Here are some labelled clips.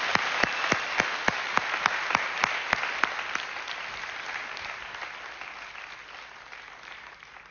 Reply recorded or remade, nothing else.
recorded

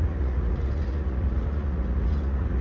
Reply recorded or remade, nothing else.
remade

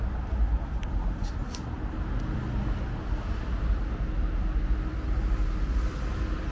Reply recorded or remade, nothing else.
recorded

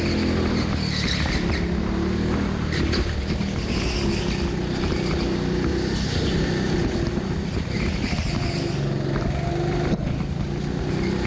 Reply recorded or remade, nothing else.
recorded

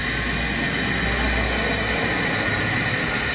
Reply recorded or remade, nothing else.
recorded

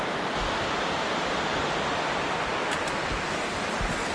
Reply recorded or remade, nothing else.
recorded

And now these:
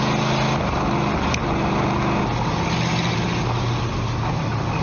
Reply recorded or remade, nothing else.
recorded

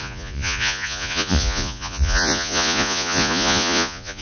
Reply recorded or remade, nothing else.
remade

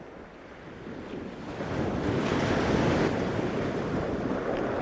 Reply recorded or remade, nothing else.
recorded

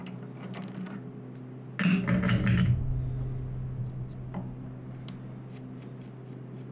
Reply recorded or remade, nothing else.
recorded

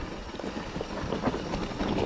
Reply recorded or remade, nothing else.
recorded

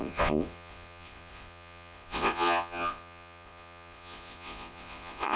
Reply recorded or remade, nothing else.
remade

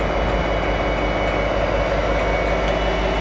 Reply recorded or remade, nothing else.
recorded